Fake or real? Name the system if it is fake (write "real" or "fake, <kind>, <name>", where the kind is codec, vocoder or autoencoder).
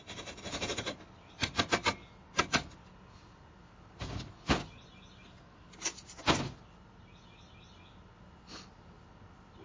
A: real